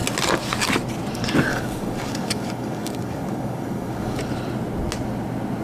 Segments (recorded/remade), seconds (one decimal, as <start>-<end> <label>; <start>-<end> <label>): 0.0-1.5 recorded; 1.5-4.2 remade; 4.2-5.6 recorded

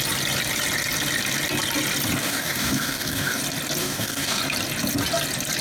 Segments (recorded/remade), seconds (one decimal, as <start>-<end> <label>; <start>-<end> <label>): 0.0-2.2 recorded; 2.2-3.4 remade; 3.4-3.8 recorded; 3.8-4.4 remade; 4.4-5.6 recorded

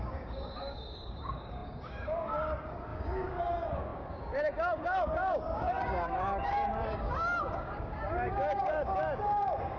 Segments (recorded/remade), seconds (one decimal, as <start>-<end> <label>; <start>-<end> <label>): 0.0-9.8 remade

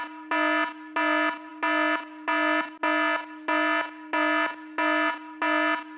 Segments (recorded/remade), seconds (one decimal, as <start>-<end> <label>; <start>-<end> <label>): 0.0-6.0 recorded

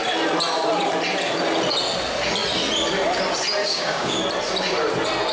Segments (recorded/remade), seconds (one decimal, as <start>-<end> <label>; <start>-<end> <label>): 0.0-3.6 recorded; 3.6-4.2 remade; 4.2-5.3 recorded

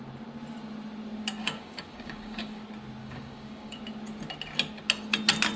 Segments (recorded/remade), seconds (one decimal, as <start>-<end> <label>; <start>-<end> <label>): 0.0-1.4 recorded; 1.4-2.6 remade; 2.6-3.0 recorded; 3.0-3.8 remade; 3.8-5.6 recorded

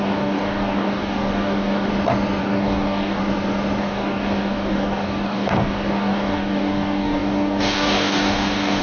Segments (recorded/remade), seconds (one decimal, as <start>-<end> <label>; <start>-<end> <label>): 0.0-1.9 remade; 1.9-2.4 recorded; 2.4-3.2 remade; 3.2-3.8 recorded; 3.8-8.8 remade